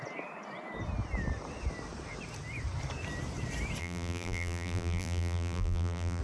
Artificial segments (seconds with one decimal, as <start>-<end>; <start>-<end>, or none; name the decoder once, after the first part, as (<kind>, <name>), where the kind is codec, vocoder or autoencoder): 3.8-6.2 (vocoder, BigVGAN v2)